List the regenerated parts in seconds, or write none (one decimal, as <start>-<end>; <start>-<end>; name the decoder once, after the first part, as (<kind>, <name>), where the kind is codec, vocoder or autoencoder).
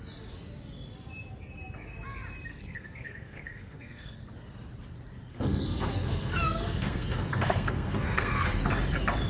2.5-4.2 (codec, SNAC); 5.3-8.6